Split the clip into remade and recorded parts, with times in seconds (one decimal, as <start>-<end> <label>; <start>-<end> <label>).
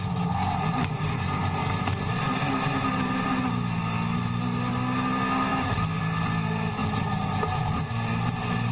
0.0-5.5 recorded; 5.5-6.0 remade; 6.0-8.7 recorded